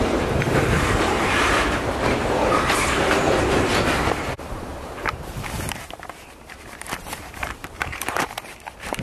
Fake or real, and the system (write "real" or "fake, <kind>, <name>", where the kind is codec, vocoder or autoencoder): fake, vocoder, BigVGAN v2